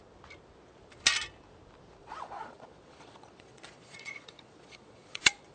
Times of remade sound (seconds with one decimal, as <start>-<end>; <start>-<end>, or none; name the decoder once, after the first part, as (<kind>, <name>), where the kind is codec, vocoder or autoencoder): 2.0-5.5 (vocoder, Vocos)